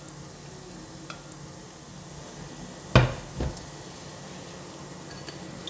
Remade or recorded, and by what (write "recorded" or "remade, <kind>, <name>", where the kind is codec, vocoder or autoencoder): recorded